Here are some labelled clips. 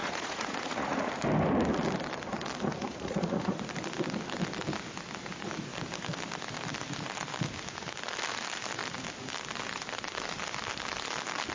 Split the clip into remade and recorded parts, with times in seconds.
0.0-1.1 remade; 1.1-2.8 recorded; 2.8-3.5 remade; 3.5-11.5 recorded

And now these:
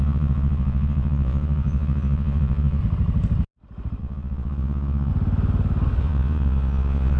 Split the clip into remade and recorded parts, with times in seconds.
0.0-2.8 remade; 2.8-4.0 recorded; 4.0-5.1 remade; 5.1-6.0 recorded; 6.0-7.2 remade

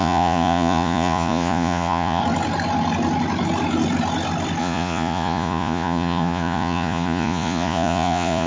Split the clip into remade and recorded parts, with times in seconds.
0.0-2.2 remade; 2.2-4.6 recorded; 4.6-8.5 remade

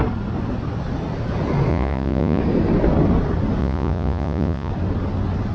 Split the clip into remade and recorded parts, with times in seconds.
0.0-1.7 recorded; 1.7-2.4 remade; 2.4-3.6 recorded; 3.6-4.7 remade; 4.7-5.5 recorded

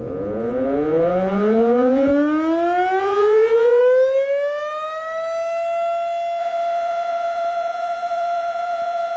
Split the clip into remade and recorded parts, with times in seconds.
0.0-2.1 remade; 2.1-3.0 recorded; 3.0-3.8 remade; 3.8-6.4 recorded; 6.4-9.2 remade